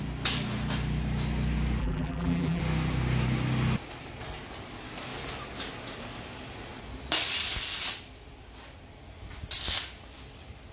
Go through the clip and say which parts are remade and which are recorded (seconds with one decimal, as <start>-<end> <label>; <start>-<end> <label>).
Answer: 0.0-1.8 recorded; 1.8-2.6 remade; 2.6-10.7 recorded